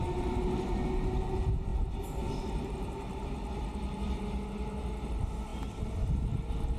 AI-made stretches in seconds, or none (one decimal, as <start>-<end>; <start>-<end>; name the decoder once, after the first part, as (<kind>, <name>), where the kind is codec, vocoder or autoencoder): 1.7-3.2 (vocoder, BigVGAN v2)